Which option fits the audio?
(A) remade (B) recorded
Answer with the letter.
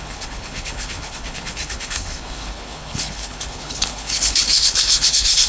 A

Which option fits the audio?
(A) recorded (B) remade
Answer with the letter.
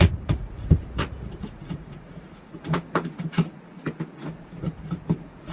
B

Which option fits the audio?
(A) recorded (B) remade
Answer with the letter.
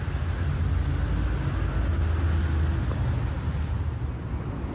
A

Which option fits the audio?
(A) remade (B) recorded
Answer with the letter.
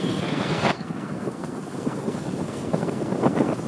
A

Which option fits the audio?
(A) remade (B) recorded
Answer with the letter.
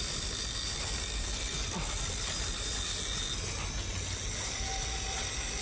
B